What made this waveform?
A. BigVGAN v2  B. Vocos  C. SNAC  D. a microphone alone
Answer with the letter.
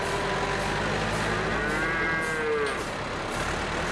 D